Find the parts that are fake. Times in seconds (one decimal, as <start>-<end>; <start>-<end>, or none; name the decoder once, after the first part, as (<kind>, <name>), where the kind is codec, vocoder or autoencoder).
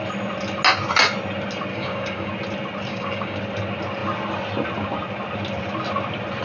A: 1.7-2.3 (codec, DAC); 2.9-3.4